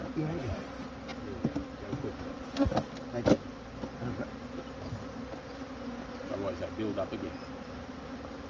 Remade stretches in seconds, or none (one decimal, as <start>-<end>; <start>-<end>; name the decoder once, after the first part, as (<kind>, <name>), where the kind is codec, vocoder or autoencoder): none